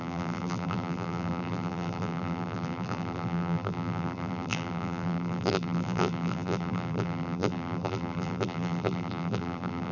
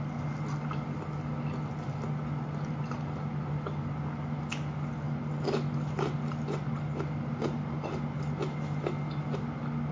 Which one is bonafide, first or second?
second